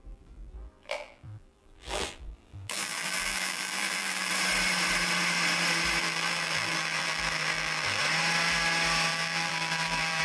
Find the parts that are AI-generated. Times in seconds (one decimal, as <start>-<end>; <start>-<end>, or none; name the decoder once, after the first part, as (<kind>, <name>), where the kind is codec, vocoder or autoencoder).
0.0-4.3 (vocoder, BigVGAN v2); 6.0-8.0; 9.1-10.2